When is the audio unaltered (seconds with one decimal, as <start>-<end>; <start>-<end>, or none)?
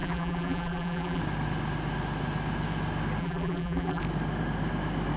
1.2-3.2; 4.0-5.2